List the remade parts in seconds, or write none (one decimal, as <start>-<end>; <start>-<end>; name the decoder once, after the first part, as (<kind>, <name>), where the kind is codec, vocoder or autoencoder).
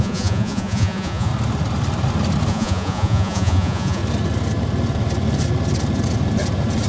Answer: 0.0-1.3 (vocoder, Vocos); 2.5-4.0